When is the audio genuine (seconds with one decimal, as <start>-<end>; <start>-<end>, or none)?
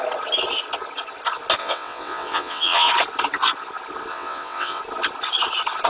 0.0-1.6; 2.9-4.1; 4.8-5.9